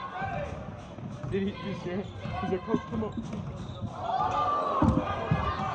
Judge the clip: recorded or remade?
recorded